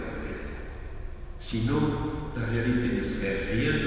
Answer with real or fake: real